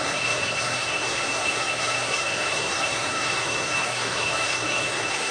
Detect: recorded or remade remade